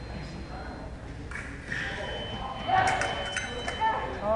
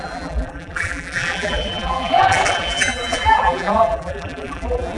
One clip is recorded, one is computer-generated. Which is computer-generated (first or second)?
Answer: second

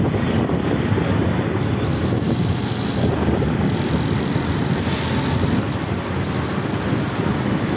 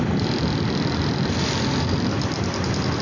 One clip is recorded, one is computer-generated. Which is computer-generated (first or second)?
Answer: second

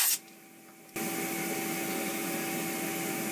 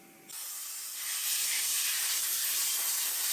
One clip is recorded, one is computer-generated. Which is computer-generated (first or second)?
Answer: second